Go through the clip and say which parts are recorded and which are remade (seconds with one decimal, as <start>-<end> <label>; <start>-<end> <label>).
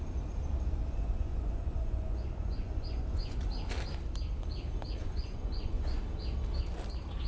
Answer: 0.0-0.8 recorded; 0.8-3.4 remade; 3.4-5.0 recorded; 5.0-6.0 remade; 6.0-7.3 recorded